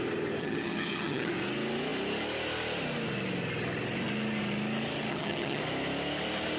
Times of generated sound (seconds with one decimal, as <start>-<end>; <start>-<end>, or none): 0.4-1.3; 5.1-5.6